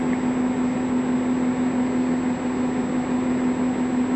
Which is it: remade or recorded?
recorded